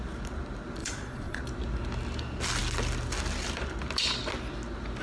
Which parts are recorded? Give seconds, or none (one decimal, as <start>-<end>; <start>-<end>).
0.0-0.8; 1.4-5.0